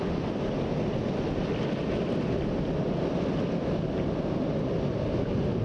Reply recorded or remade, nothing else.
recorded